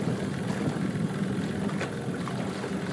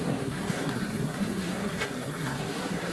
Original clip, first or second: first